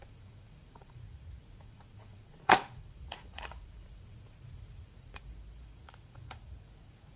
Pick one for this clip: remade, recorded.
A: remade